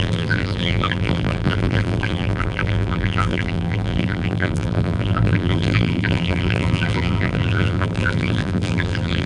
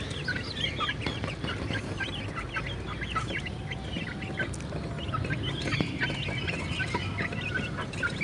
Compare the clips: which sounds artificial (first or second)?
first